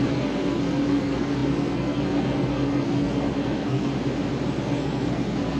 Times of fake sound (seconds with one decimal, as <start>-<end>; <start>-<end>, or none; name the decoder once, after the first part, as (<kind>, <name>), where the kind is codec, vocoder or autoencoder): 0.0-3.9 (codec, SNAC); 4.6-5.6